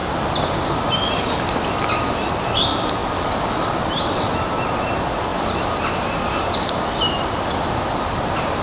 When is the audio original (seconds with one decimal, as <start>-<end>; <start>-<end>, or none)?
1.3-3.0; 3.7-5.3; 7.6-8.6